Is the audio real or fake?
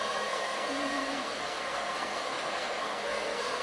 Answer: fake